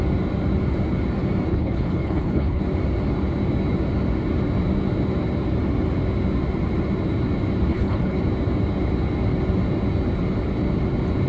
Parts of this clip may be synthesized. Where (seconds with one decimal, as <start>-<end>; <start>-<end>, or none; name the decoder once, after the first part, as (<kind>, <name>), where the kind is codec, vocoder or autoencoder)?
1.5-2.6 (codec, HILCodec); 7.7-8.2